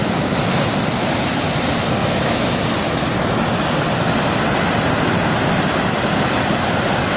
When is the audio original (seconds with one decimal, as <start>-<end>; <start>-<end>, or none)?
0.0-2.0; 2.5-7.2